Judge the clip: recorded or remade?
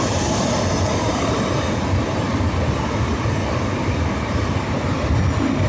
recorded